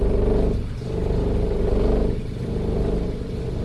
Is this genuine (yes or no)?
yes